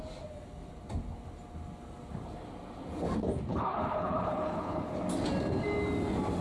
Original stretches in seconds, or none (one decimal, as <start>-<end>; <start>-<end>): 0.0-3.5; 5.0-6.4